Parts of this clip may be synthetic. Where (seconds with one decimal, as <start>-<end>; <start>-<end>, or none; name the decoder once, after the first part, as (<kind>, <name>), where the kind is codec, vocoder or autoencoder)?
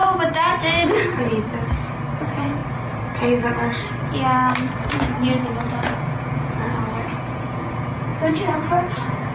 2.2-2.6 (vocoder, Vocos); 4.7-9.3